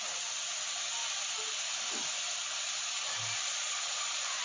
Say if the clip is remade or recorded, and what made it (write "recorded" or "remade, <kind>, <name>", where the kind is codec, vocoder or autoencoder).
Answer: recorded